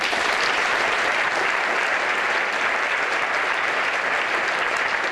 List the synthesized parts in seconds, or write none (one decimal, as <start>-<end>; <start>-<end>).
0.0-1.1; 4.2-5.1